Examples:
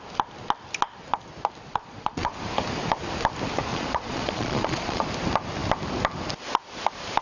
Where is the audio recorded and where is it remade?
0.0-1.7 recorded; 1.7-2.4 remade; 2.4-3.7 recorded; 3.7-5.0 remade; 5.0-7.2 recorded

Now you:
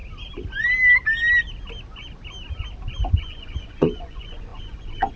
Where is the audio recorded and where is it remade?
0.0-3.1 recorded; 3.1-5.2 remade

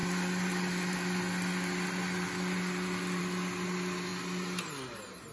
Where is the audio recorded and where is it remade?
0.0-5.3 recorded

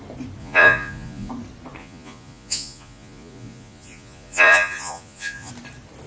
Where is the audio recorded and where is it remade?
0.0-0.4 recorded; 0.4-1.3 remade; 1.3-1.8 recorded; 1.8-5.5 remade; 5.5-6.1 recorded